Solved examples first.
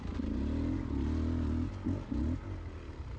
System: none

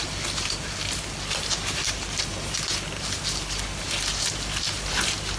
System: none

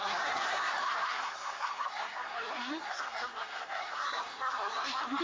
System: codec, SNAC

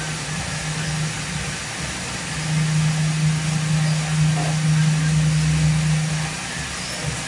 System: none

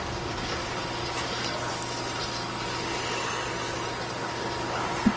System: none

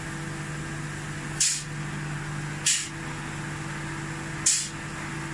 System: none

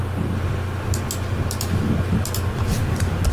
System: none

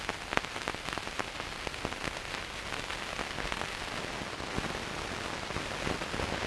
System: none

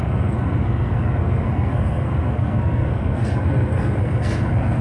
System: codec, SNAC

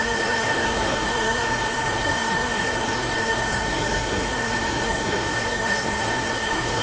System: codec, SNAC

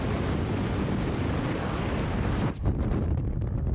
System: none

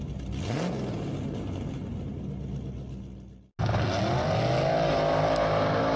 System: none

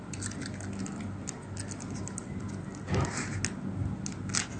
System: none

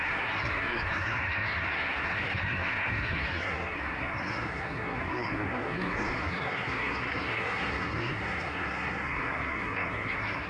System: codec, SNAC